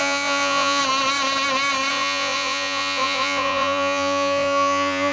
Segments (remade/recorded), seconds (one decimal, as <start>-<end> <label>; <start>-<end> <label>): 0.0-0.8 remade; 0.8-1.9 recorded; 1.9-5.1 remade